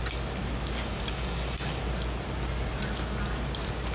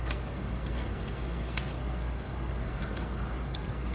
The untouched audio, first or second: first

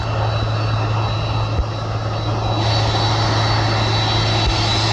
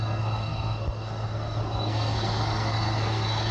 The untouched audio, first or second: first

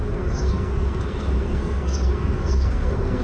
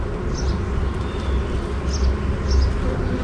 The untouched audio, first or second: second